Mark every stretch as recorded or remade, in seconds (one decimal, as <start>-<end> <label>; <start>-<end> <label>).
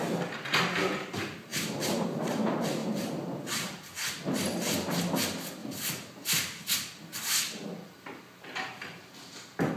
0.0-1.5 recorded; 1.5-2.2 remade; 2.2-2.8 recorded; 2.8-4.1 remade; 4.1-5.6 recorded; 5.6-7.2 remade; 7.2-9.8 recorded